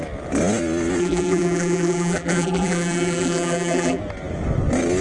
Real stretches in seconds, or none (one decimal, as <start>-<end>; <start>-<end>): 0.0-1.0; 4.0-5.0